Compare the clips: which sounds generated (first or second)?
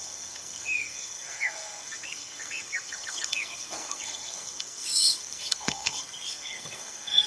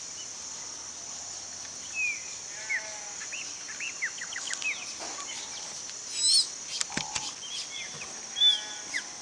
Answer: first